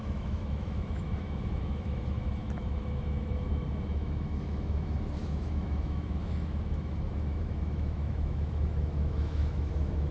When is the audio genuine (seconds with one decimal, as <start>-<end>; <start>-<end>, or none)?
none